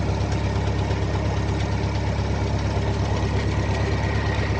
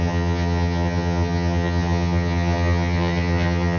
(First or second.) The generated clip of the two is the second